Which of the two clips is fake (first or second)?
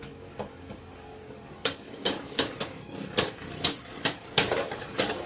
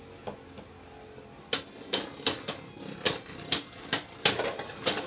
first